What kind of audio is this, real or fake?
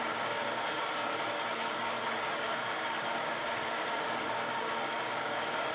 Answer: fake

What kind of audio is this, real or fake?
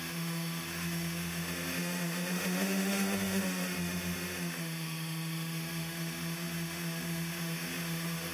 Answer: fake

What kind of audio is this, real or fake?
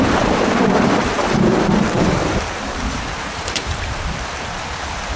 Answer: fake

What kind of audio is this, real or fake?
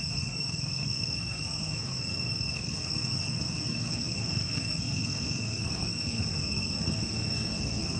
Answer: fake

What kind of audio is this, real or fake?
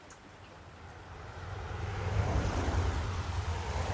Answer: fake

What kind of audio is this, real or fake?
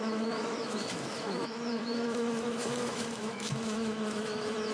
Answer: fake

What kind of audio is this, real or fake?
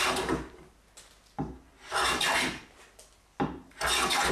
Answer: real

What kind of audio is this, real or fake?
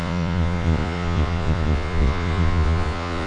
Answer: fake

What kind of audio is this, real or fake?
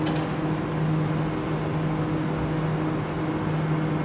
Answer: real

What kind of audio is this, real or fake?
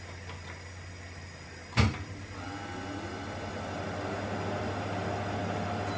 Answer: real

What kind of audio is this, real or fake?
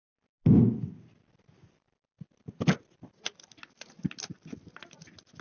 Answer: real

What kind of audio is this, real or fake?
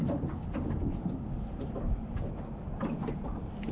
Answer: real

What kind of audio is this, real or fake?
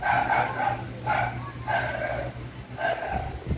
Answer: real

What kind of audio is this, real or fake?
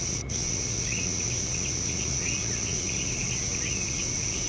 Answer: fake